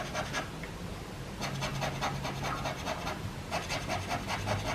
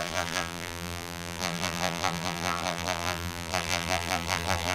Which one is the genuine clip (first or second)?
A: first